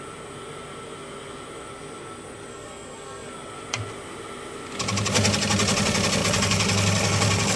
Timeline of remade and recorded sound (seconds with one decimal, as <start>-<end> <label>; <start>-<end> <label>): 0.0-2.5 recorded; 2.5-3.3 remade; 3.3-7.6 recorded